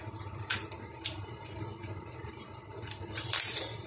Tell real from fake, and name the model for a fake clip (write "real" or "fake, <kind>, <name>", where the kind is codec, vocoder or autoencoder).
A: fake, vocoder, BigVGAN v2